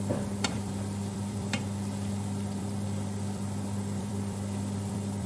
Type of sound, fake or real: fake